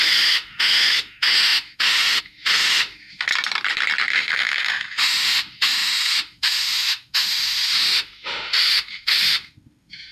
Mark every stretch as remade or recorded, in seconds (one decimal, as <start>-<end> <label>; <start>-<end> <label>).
0.0-3.3 remade; 3.3-4.1 recorded; 4.1-10.1 remade